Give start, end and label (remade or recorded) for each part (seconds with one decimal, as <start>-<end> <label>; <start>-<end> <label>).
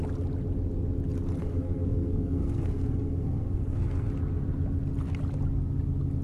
0.0-1.4 recorded; 1.4-4.1 remade; 4.1-6.2 recorded